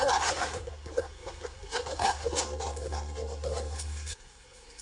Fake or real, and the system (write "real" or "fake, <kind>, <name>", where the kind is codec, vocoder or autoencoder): fake, codec, SNAC